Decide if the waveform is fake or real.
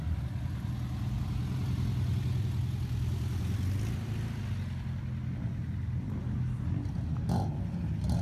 real